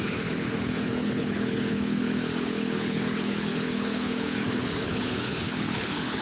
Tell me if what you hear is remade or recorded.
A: remade